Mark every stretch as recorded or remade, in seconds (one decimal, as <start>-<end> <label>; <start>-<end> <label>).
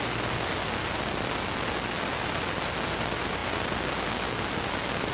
0.0-5.1 recorded